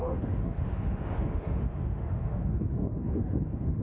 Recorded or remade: remade